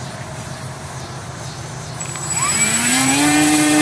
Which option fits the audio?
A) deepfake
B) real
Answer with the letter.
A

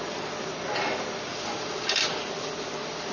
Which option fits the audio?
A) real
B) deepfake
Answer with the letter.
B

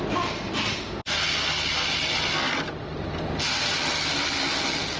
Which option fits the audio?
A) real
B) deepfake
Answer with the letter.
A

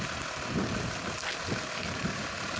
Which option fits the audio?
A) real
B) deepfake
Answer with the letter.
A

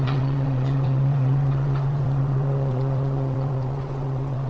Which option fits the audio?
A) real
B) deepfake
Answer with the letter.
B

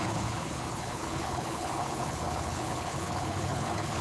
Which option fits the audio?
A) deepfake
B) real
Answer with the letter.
A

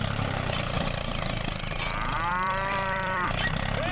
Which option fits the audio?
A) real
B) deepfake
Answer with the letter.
B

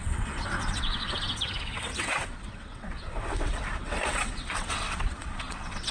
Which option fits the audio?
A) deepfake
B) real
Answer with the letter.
A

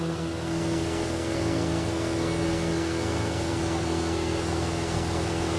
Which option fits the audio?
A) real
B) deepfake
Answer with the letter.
B